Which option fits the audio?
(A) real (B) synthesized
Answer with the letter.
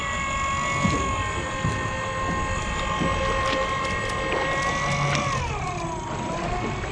A